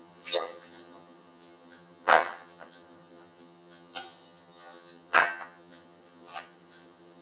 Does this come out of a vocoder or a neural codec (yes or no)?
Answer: yes